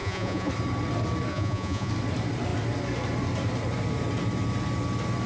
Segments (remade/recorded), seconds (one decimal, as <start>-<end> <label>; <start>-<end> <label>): 0.0-0.5 remade; 0.5-1.3 recorded; 1.3-1.9 remade; 1.9-5.3 recorded

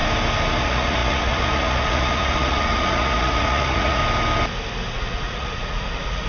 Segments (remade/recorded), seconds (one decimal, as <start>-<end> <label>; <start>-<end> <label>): 0.0-0.6 recorded; 0.6-4.0 remade; 4.0-4.9 recorded; 4.9-6.3 remade

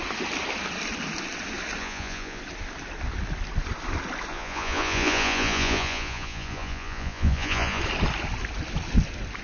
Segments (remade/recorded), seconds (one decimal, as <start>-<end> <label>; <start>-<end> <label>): 0.0-1.8 recorded; 1.8-2.4 remade; 2.4-4.3 recorded; 4.3-7.8 remade; 7.8-9.4 recorded

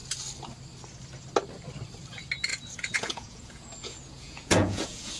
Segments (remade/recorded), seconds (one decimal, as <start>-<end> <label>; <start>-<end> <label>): 0.0-2.5 recorded; 2.5-5.2 remade

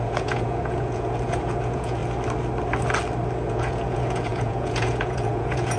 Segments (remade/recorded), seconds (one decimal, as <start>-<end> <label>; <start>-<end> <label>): 0.0-2.0 remade; 2.0-3.5 recorded; 3.5-5.8 remade